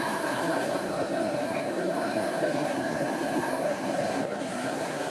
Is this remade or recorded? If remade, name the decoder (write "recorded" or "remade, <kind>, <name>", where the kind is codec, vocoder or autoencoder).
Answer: remade, codec, SNAC